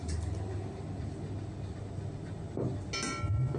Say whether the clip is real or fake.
real